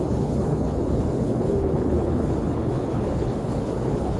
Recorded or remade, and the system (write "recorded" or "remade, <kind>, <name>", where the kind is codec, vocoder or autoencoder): remade, codec, HILCodec